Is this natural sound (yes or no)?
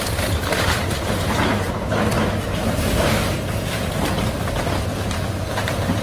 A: no